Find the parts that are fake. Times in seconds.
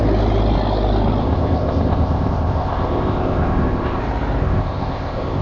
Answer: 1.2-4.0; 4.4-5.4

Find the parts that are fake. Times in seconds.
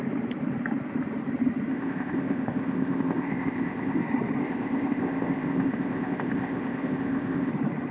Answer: 1.7-4.0; 4.4-7.5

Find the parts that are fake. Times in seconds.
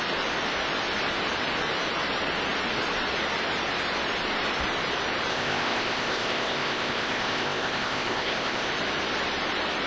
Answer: 5.3-8.7